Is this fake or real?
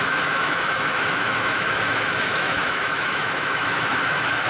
fake